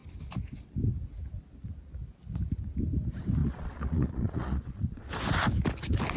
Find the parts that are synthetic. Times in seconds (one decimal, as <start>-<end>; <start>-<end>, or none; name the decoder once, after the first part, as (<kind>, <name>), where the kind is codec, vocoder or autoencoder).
3.4-5.1 (vocoder, Vocos)